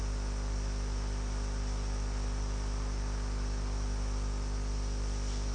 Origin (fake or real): real